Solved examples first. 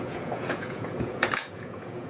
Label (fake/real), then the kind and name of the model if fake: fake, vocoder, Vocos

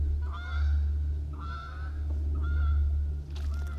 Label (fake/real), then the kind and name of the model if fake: real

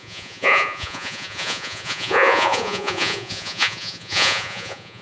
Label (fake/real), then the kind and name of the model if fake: fake, vocoder, Vocos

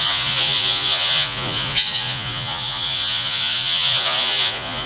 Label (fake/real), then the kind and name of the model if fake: fake, vocoder, Vocos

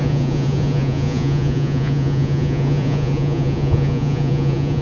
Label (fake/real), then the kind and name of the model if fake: fake, vocoder, Vocos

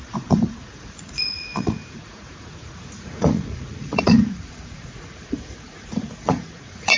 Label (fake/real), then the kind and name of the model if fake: fake, vocoder, Vocos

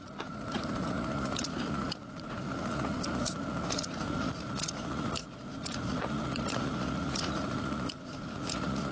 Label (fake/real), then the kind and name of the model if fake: fake, vocoder, Vocos